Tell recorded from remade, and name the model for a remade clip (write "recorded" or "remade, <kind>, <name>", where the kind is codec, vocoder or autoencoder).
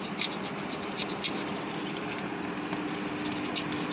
recorded